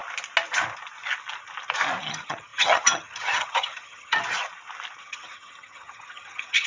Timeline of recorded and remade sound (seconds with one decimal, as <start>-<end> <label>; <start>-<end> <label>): 0.0-2.0 recorded; 2.0-4.2 remade; 4.2-5.0 recorded; 5.0-6.7 remade